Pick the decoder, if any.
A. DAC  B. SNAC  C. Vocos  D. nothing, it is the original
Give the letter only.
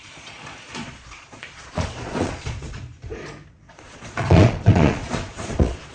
C